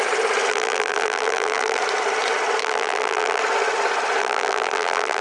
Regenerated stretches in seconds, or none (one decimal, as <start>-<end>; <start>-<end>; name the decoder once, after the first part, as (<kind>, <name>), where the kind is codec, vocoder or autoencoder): 0.5-1.8 (vocoder, BigVGAN v2); 2.6-3.4; 4.2-5.2